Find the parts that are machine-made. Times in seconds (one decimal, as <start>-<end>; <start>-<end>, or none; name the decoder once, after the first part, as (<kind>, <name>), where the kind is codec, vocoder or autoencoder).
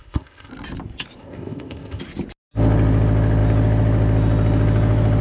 0.0-0.5 (codec, ZipCodec); 1.2-2.0